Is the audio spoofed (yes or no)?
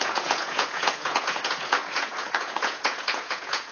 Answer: yes